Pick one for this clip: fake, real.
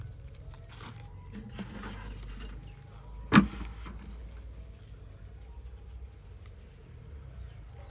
real